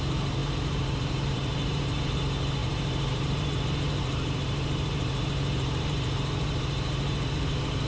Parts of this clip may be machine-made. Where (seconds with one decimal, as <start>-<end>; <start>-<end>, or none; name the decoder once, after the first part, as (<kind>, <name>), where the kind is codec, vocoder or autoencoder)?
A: 0.0-7.9 (vocoder, BigVGAN v2)